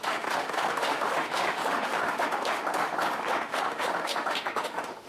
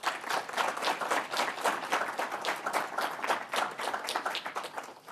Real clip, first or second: second